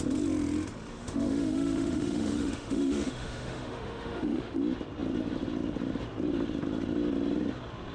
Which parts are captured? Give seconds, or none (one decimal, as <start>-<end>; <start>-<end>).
0.0-0.9; 4.6-7.9